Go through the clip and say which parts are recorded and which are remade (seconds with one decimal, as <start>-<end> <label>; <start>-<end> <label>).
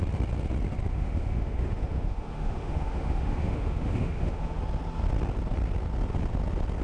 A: 0.0-0.9 recorded; 0.9-4.6 remade; 4.6-6.8 recorded